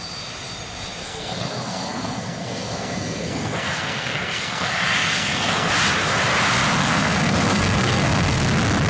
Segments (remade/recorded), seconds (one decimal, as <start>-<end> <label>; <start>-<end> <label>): 0.0-1.0 recorded; 1.0-5.7 remade; 5.7-6.8 recorded; 6.8-8.4 remade; 8.4-8.9 recorded